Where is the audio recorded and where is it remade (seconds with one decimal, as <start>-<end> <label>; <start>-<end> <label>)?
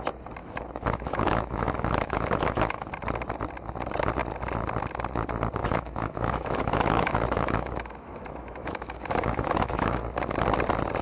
0.0-0.4 recorded; 0.4-2.9 remade; 2.9-5.6 recorded; 5.6-10.0 remade; 10.0-11.0 recorded